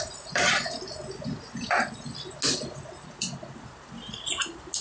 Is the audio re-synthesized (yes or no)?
no